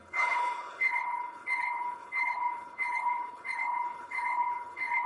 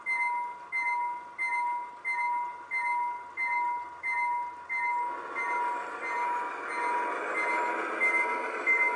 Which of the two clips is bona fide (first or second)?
second